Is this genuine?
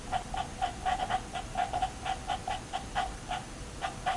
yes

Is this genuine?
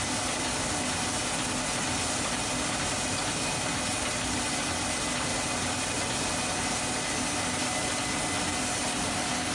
yes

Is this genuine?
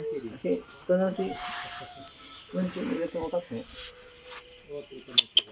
yes